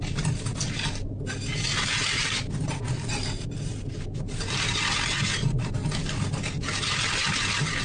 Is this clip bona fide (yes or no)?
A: yes